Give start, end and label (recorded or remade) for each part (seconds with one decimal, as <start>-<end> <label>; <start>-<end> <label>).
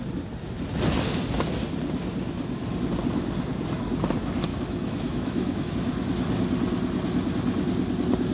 0.0-4.5 recorded; 4.5-5.7 remade; 5.7-8.3 recorded